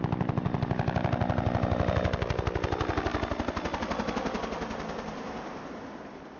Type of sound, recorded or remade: recorded